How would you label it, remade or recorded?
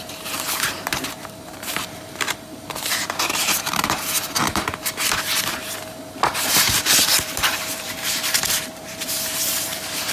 remade